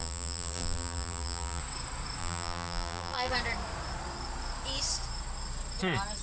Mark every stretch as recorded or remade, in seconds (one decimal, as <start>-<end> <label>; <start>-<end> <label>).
0.0-1.6 remade; 1.6-2.2 recorded; 2.2-3.3 remade; 3.3-6.2 recorded